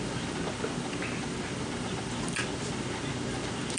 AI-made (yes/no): no